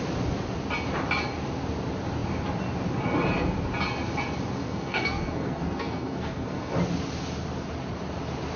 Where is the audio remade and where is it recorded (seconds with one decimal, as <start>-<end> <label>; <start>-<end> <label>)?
0.0-4.6 recorded; 4.6-6.7 remade; 6.7-8.6 recorded